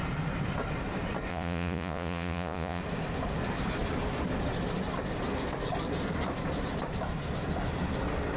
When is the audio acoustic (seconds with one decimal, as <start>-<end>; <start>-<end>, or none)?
0.0-1.3; 2.8-8.4